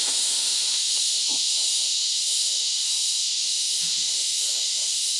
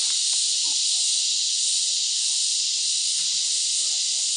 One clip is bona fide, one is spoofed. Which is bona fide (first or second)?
second